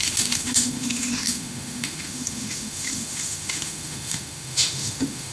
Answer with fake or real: fake